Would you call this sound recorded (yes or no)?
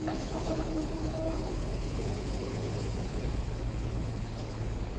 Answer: no